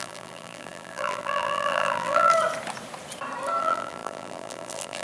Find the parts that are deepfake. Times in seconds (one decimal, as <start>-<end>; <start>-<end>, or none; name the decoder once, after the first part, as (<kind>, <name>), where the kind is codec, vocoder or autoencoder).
0.0-2.3 (vocoder, BigVGAN v2); 3.6-5.0